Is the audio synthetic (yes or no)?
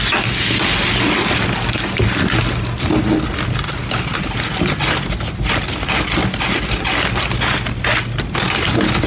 no